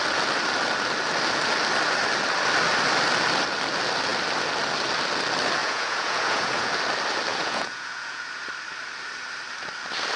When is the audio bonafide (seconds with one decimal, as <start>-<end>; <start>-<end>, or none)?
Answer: 0.0-5.6; 6.7-7.3; 8.4-10.2